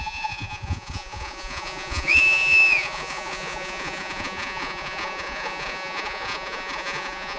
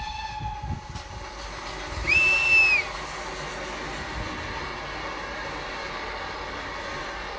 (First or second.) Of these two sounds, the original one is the second